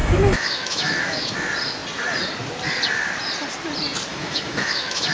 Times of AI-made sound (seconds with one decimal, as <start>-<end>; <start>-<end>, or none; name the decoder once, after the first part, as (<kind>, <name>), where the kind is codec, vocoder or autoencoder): 0.0-1.3 (autoencoder, DAC-VAE); 4.1-5.1

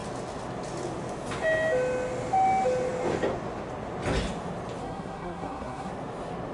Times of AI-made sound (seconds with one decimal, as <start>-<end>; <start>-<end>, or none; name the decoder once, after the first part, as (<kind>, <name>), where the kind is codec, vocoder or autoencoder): 4.8-5.9 (codec, SNAC)

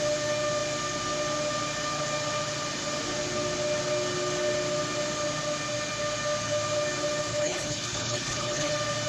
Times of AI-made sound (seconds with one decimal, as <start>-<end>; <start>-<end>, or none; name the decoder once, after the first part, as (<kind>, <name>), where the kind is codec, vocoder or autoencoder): 7.3-8.7 (codec, HILCodec)

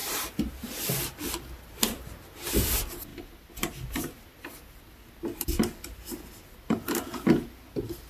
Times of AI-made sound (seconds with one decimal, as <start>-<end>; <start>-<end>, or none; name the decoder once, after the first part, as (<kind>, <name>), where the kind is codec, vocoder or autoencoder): none

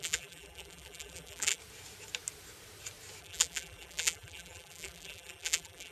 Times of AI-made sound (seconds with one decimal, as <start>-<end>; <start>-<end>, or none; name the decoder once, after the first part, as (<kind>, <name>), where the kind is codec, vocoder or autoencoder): 0.0-1.6 (vocoder, BigVGAN v2); 3.2-5.9

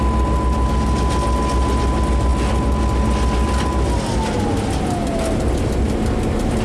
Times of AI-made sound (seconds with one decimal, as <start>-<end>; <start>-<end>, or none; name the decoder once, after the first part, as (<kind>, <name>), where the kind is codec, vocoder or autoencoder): none

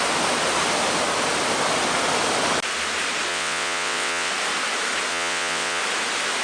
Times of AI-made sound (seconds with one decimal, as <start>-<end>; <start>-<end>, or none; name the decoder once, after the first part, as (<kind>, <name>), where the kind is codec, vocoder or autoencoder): 3.3-4.3 (vocoder, WaveNeXt); 5.1-5.8

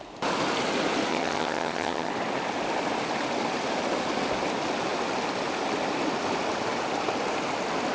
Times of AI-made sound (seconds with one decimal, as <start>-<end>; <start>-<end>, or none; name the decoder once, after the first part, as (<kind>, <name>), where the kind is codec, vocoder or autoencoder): 1.1-2.1 (vocoder, HiFi-GAN)